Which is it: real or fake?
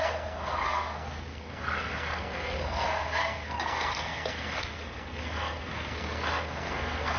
fake